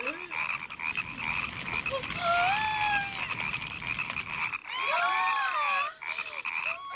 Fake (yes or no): no